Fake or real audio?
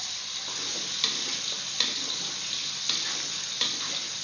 real